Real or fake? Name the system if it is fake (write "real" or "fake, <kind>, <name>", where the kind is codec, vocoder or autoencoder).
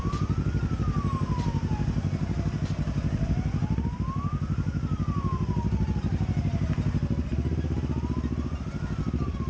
real